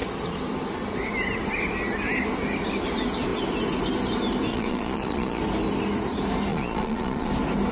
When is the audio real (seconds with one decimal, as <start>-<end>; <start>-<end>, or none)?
0.0-4.5; 5.4-6.5; 7.3-7.7